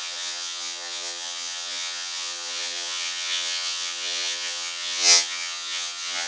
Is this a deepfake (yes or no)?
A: yes